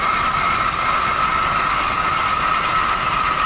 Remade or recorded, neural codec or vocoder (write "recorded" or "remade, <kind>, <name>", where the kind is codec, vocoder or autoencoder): recorded